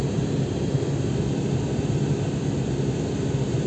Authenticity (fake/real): real